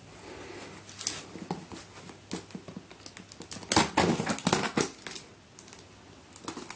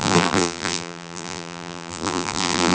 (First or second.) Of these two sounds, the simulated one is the second